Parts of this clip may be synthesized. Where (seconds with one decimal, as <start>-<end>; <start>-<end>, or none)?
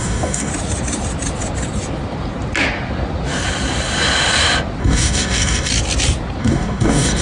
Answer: 0.0-0.5; 4.8-5.7; 6.4-7.2